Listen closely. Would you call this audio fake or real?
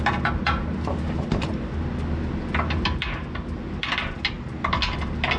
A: real